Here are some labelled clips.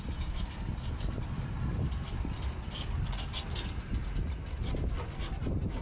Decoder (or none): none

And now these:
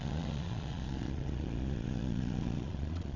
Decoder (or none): vocoder, Vocos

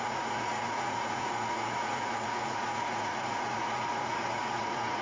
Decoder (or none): vocoder, Vocos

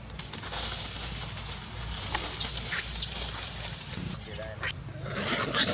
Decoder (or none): none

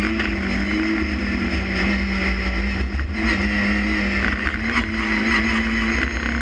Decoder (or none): none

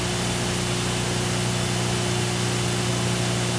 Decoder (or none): none